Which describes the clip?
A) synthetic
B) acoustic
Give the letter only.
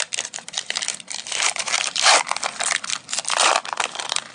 A